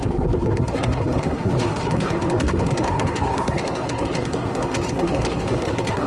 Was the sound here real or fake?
fake